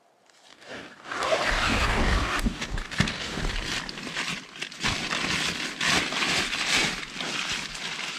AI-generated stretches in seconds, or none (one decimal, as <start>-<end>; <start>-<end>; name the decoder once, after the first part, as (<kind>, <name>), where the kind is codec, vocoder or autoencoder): 0.5-3.4 (codec, DAC)